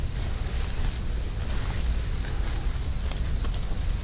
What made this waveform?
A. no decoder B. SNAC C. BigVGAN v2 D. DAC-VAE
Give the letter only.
A